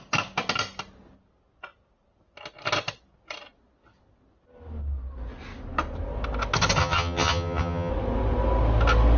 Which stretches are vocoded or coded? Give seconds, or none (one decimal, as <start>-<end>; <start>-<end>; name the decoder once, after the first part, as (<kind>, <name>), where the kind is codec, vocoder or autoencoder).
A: 6.8-7.9 (vocoder, HiFi-GAN)